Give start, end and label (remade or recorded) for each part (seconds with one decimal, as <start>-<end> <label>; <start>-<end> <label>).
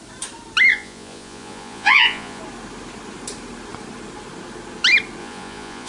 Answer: 0.0-0.7 recorded; 0.7-2.4 remade; 2.4-5.2 recorded; 5.2-5.9 remade